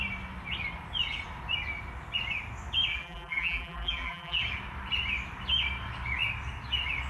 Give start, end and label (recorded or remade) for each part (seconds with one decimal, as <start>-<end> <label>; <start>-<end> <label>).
0.0-2.9 recorded; 2.9-4.4 remade; 4.4-7.1 recorded